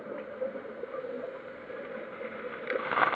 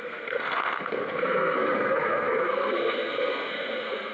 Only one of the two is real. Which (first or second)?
first